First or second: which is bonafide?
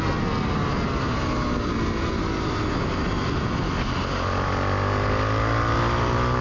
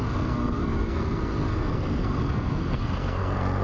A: first